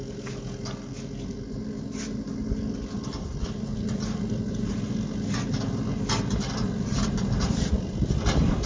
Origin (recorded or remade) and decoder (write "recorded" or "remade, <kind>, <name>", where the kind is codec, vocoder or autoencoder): recorded